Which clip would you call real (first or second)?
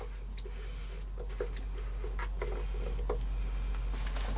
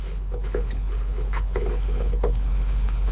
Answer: first